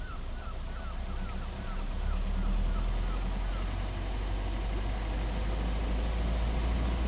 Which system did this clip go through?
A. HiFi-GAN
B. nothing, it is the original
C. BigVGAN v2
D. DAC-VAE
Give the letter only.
B